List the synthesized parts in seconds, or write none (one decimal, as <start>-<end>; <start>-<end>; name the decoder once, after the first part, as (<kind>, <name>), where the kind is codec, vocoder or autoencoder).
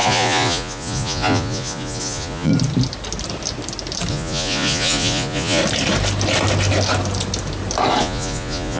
0.0-2.5 (vocoder, Vocos); 4.1-5.6; 8.0-8.8